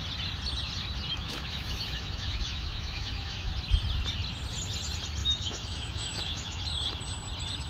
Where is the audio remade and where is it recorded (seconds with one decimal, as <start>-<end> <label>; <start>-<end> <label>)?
0.0-1.1 recorded; 1.1-3.5 remade; 3.5-5.2 recorded; 5.2-6.6 remade; 6.6-7.7 recorded